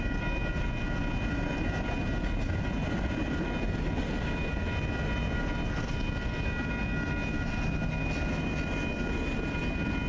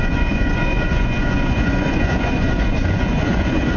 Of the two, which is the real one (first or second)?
first